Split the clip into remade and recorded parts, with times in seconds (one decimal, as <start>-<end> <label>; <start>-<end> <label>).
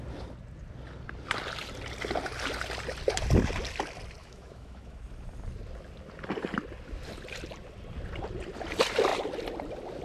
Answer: 0.0-4.2 recorded; 4.2-5.0 remade; 5.0-10.0 recorded